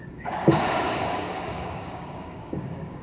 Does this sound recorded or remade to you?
remade